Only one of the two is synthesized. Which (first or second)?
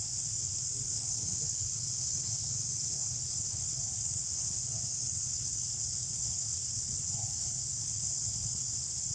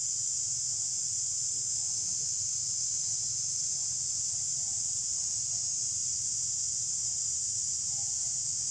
first